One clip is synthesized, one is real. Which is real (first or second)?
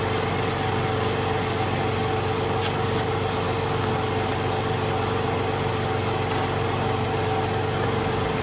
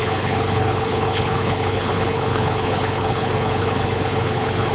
first